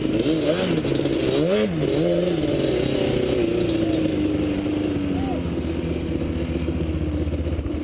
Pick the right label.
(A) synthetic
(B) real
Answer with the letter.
B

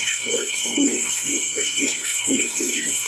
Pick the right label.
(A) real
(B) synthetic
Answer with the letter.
B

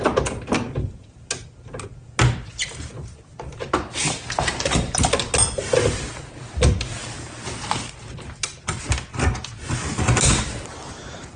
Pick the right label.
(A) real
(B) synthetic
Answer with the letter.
A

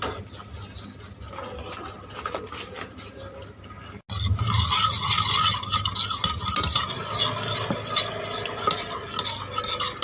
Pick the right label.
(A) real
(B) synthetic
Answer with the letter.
A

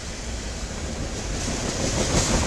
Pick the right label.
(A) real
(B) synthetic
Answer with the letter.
A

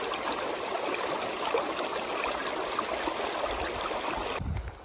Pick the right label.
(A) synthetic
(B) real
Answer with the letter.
B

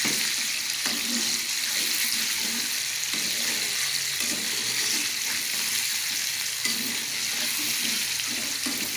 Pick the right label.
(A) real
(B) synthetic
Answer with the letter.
A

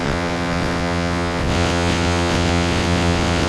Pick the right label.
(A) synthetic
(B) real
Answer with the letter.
A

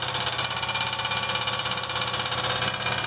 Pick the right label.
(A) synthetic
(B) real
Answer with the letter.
B